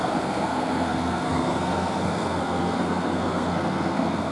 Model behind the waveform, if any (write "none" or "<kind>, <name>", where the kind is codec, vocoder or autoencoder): codec, SNAC